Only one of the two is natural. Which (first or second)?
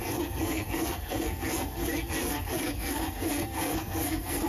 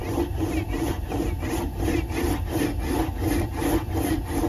second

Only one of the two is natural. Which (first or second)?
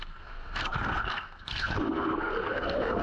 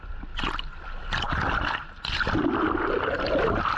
second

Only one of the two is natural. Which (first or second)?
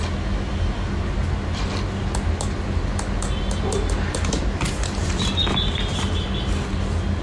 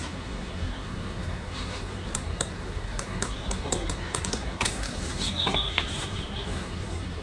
first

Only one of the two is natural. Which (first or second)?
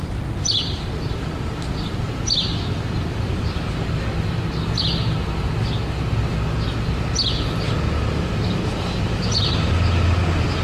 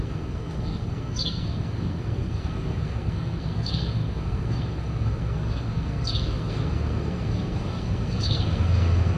first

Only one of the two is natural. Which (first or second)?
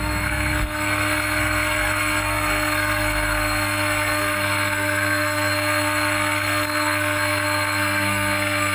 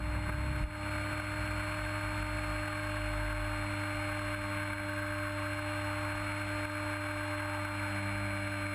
second